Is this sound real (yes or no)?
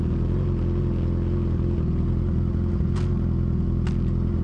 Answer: yes